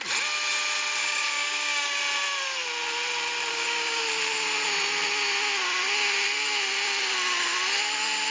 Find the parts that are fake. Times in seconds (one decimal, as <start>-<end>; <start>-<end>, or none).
1.0-2.0; 3.5-4.0